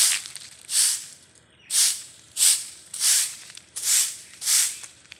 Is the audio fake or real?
fake